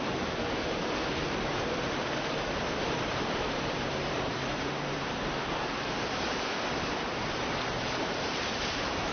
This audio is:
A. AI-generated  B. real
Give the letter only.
A